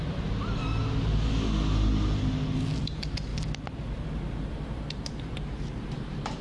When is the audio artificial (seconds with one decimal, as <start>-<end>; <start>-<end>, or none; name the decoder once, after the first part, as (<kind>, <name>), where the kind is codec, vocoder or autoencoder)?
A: 0.0-0.6 (vocoder, BigVGAN v2); 2.8-3.3; 5.2-6.4